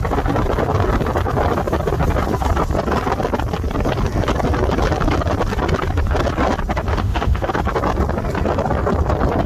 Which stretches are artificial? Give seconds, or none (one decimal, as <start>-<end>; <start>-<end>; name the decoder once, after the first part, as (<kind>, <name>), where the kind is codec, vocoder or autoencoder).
6.9-7.5 (autoencoder, DAC-VAE)